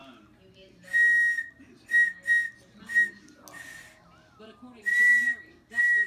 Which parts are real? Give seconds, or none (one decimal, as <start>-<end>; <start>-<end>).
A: 0.0-6.1